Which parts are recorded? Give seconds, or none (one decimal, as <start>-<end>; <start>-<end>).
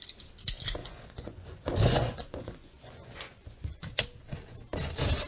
0.0-0.8; 4.0-5.3